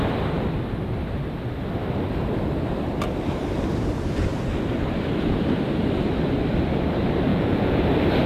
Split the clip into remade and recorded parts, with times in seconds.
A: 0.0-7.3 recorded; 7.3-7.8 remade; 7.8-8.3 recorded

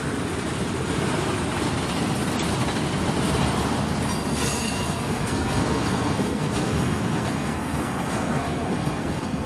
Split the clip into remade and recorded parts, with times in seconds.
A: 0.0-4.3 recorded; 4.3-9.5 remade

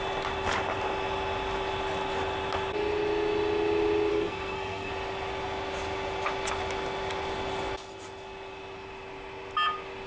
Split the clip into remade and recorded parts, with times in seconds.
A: 0.0-4.1 recorded; 4.1-4.9 remade; 4.9-10.1 recorded

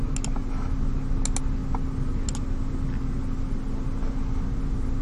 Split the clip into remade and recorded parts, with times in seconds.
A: 0.0-5.0 recorded

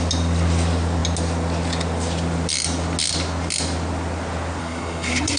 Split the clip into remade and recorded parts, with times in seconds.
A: 0.0-4.6 recorded; 4.6-5.4 remade

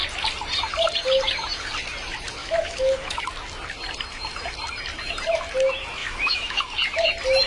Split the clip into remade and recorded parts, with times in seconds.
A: 0.0-2.4 recorded; 2.4-3.2 remade; 3.2-6.0 recorded; 6.0-6.6 remade; 6.6-7.5 recorded